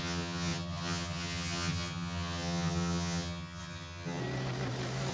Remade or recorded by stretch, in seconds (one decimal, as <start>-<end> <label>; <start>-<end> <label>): 0.0-4.2 remade; 4.2-5.1 recorded

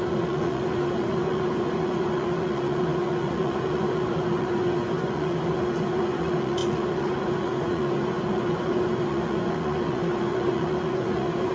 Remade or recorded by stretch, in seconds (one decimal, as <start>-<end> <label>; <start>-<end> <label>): 0.0-11.5 remade

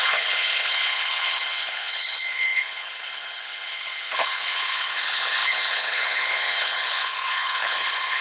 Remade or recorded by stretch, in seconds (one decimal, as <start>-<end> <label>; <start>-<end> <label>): 0.0-8.2 remade